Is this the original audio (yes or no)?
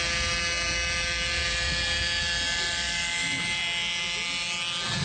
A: yes